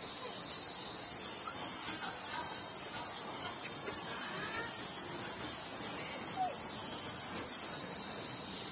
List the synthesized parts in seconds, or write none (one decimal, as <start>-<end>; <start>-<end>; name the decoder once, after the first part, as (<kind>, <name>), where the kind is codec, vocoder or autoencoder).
none